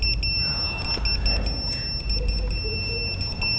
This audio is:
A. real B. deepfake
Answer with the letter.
A